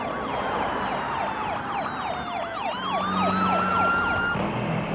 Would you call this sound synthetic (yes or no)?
no